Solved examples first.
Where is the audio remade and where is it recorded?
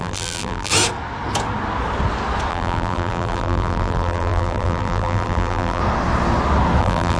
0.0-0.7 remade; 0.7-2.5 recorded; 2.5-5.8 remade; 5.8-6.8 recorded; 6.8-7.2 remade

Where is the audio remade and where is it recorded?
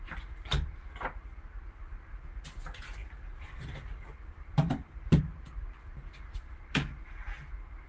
0.0-3.0 recorded; 3.0-5.2 remade; 5.2-7.9 recorded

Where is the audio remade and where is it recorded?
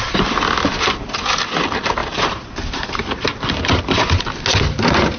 0.0-2.0 recorded; 2.0-4.2 remade; 4.2-5.2 recorded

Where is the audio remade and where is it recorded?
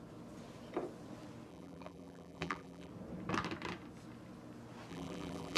0.0-1.5 recorded; 1.5-2.9 remade; 2.9-4.9 recorded; 4.9-5.6 remade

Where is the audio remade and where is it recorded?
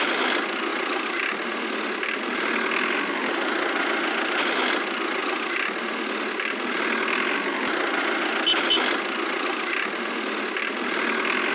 0.0-11.5 recorded